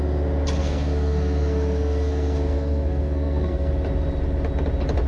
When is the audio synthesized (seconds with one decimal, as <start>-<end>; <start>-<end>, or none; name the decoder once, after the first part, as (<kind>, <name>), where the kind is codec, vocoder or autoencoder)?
0.6-3.7 (codec, SNAC)